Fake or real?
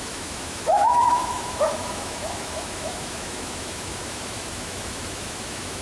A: fake